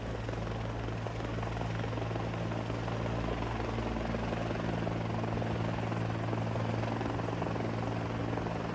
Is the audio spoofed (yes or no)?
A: no